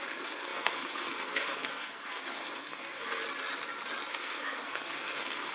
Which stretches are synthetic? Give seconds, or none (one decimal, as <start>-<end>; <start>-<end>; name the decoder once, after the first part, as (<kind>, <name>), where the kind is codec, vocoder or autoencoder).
0.0-3.2 (codec, SNAC); 4.1-5.5